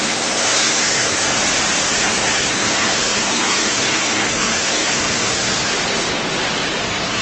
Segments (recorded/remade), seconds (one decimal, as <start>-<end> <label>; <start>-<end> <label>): 0.0-1.4 remade; 1.4-1.9 recorded; 1.9-5.7 remade; 5.7-6.8 recorded; 6.8-7.2 remade